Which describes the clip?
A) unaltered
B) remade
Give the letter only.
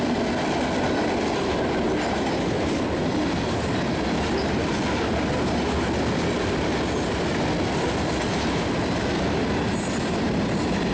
A